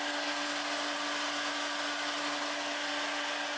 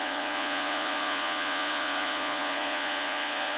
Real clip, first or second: first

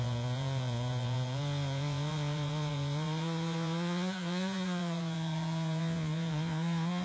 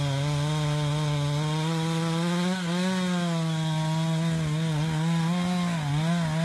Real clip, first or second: second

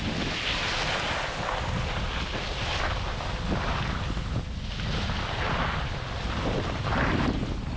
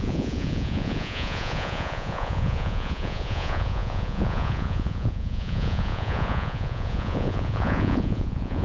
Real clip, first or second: first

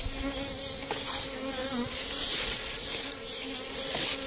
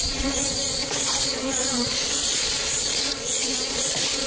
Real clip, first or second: first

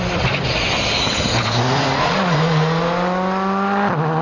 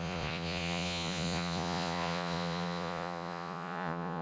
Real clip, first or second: first